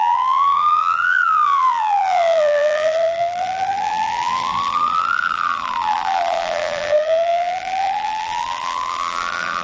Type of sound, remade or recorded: remade